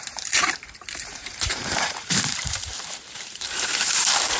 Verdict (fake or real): fake